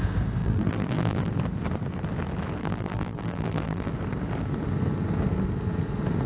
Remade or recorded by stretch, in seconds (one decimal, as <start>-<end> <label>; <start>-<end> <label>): 0.0-0.4 recorded; 0.4-1.3 remade; 1.3-2.6 recorded; 2.6-3.9 remade; 3.9-6.3 recorded